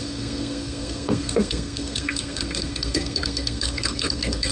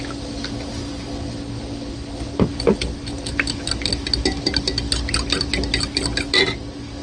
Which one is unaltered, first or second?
second